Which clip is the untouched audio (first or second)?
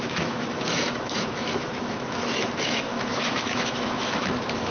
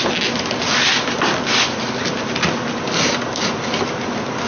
second